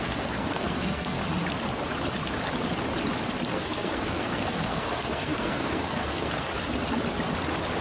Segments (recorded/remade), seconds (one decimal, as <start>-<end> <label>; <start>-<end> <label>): 0.0-1.2 remade; 1.2-3.5 recorded; 3.5-6.5 remade; 6.5-7.8 recorded